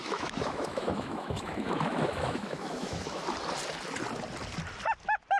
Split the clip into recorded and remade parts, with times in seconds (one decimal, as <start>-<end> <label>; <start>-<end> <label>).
0.0-3.2 remade; 3.2-5.4 recorded